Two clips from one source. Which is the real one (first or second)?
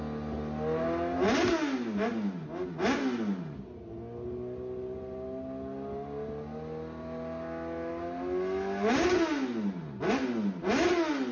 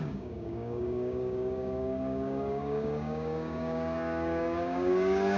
first